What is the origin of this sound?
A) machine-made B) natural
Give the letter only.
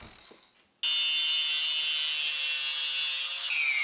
B